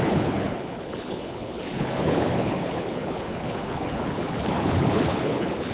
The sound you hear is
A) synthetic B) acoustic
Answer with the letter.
A